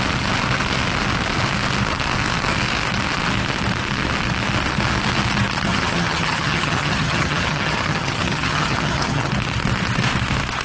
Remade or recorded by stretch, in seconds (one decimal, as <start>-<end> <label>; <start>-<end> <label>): 0.0-5.7 recorded; 5.7-9.3 remade; 9.3-10.6 recorded